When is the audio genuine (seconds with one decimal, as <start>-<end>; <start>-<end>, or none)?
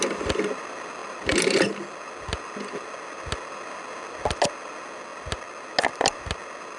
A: 0.0-6.8